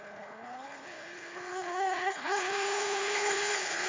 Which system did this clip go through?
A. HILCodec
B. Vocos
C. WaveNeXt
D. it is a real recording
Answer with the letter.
A